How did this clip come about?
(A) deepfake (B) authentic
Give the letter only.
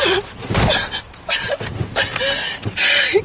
B